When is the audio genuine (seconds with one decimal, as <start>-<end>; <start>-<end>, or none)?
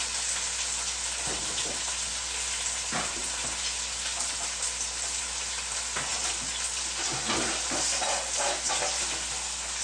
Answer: 0.0-9.8